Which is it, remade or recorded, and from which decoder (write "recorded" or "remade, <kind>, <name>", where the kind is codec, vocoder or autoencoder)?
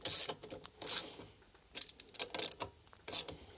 recorded